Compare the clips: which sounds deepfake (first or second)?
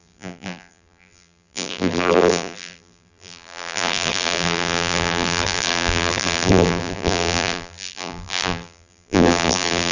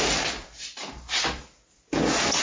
first